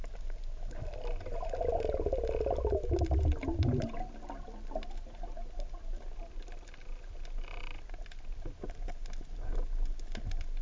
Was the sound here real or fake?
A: real